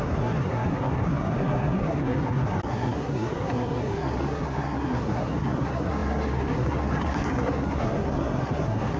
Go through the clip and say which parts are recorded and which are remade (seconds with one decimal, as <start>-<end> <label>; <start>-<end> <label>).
0.0-9.0 remade